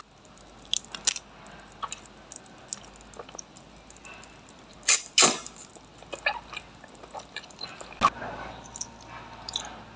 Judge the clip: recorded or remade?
recorded